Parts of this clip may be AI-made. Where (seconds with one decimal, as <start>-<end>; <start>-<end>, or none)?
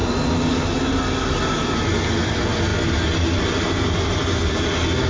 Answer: none